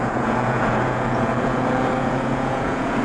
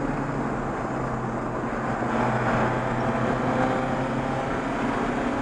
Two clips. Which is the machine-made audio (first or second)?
first